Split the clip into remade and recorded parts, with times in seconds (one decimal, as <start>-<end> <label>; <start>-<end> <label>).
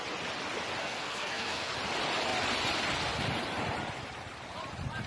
0.0-0.8 recorded; 0.8-1.7 remade; 1.7-5.1 recorded